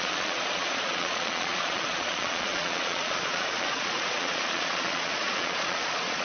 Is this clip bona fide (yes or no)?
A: no